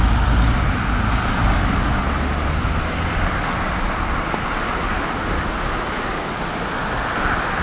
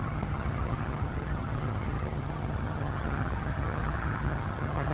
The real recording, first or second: first